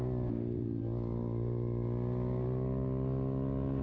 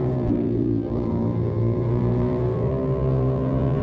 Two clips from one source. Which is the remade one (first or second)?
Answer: second